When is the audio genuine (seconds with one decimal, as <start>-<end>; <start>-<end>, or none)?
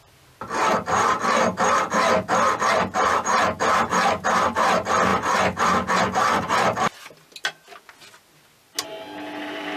0.0-9.8